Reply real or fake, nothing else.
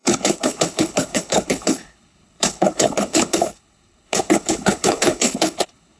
fake